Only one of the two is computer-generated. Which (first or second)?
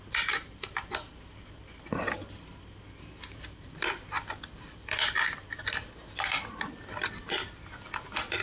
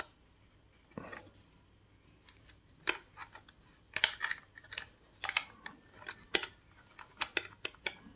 first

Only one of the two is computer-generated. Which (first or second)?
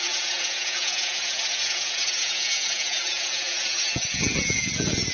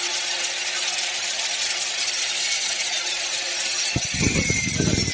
first